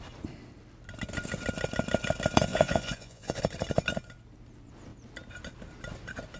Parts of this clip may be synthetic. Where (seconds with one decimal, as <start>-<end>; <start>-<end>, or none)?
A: 2.5-3.4